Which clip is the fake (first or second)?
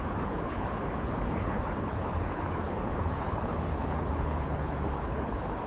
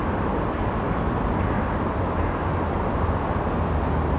first